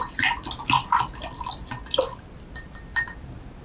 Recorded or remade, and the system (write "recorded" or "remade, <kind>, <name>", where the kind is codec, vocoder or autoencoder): recorded